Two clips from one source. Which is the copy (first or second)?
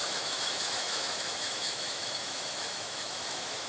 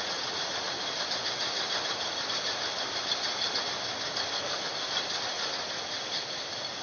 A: first